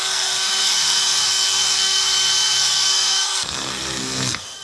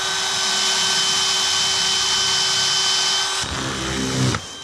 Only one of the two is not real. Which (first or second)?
first